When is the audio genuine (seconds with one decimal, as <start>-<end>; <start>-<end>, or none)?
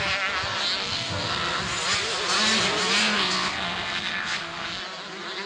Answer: 0.0-0.8; 1.6-3.0; 4.8-5.5